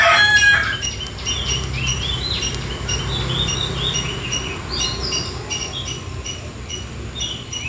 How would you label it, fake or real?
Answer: real